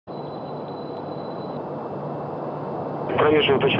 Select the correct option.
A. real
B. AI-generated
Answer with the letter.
A